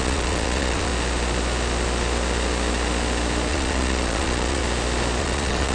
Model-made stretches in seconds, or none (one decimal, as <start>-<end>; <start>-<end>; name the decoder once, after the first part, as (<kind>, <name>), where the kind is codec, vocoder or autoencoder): 0.0-0.9 (vocoder, Vocos); 3.5-4.6; 5.2-5.7